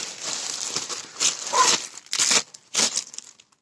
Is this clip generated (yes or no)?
no